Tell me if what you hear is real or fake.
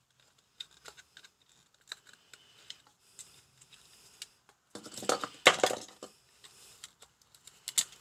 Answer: real